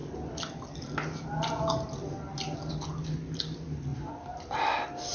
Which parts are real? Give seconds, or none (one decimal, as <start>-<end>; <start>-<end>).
0.0-5.1